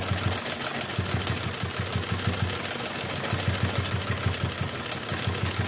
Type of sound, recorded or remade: recorded